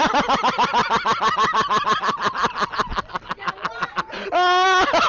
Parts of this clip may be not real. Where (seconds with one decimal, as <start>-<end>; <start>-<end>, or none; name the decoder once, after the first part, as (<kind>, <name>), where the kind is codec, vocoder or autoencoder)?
none